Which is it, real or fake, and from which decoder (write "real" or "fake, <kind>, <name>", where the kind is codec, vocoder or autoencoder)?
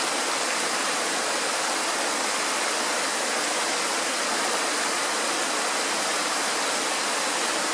real